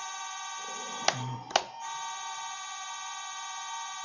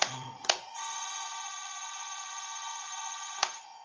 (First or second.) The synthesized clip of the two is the second